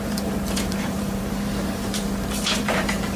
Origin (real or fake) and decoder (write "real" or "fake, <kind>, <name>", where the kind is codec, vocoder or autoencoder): fake, vocoder, BigVGAN v2